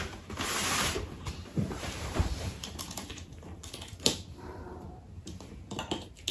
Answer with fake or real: fake